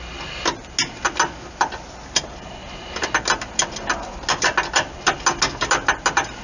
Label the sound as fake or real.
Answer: real